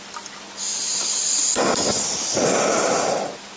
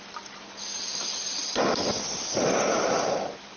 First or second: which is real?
first